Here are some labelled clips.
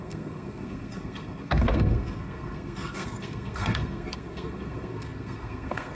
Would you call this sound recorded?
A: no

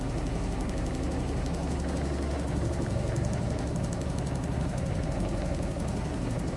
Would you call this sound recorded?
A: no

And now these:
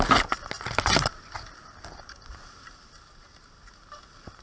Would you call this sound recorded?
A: yes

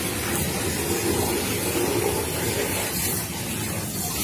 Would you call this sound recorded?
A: yes